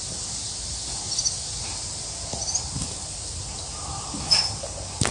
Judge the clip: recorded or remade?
recorded